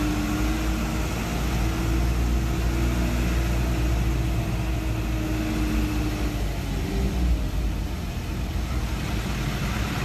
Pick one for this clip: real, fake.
real